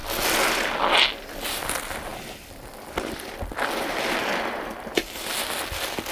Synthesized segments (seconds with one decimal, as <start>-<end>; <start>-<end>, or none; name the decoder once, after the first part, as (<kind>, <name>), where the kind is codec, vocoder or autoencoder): none

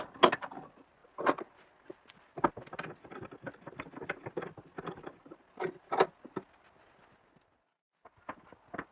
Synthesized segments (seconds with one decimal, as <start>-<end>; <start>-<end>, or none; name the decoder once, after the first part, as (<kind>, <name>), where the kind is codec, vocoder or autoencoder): none

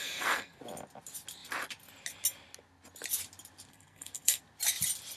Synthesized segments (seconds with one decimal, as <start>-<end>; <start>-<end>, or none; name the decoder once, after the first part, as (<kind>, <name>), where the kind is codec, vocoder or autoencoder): 0.0-0.6 (codec, SNAC); 3.7-4.4

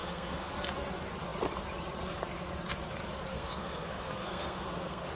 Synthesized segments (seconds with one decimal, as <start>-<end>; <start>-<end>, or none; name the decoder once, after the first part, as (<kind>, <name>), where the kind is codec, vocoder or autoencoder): 0.0-0.5 (codec, SNAC); 3.3-5.1

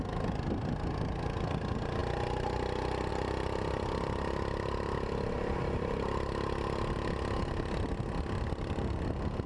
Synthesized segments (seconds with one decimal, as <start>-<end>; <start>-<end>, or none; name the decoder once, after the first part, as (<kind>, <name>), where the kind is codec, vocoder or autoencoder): none

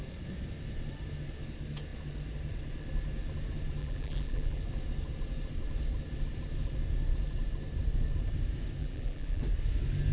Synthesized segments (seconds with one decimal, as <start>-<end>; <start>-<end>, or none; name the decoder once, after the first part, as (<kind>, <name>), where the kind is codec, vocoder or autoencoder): 3.8-4.6 (vocoder, BigVGAN v2); 8.8-9.4

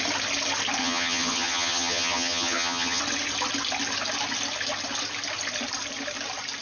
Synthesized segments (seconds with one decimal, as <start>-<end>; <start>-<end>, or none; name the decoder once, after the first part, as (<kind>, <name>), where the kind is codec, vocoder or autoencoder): 0.8-3.0 (vocoder, HiFi-GAN)